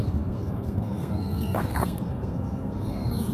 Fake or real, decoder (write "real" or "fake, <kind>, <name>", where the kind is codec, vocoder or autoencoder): fake, codec, SNAC